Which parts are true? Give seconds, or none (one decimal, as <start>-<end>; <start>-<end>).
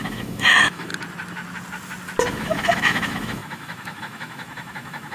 0.9-2.3